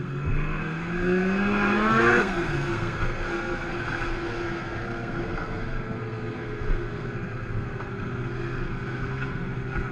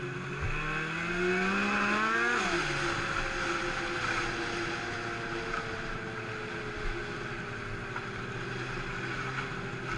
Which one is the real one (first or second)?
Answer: second